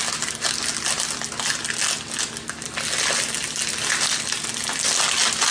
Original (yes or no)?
yes